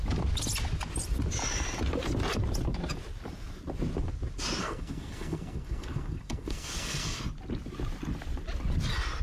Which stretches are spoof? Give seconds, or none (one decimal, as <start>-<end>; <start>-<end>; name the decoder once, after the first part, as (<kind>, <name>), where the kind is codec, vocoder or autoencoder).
4.6-7.2 (codec, SNAC)